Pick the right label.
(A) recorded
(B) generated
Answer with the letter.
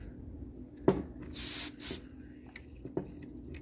A